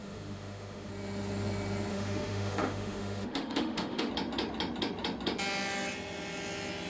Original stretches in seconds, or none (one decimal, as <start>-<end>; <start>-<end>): 0.9-1.9; 4.1-6.9